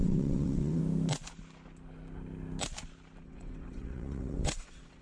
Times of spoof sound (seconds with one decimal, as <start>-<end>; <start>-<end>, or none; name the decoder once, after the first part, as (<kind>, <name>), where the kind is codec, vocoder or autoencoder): 0.0-0.8 (vocoder, WaveNeXt); 3.2-5.0